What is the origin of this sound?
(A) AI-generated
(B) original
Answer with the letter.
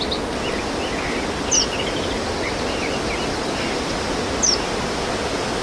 B